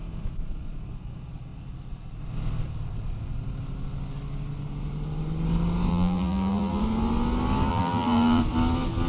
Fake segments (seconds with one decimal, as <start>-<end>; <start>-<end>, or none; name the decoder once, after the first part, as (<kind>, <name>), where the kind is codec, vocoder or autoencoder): 5.9-6.8 (vocoder, BigVGAN v2); 7.7-8.4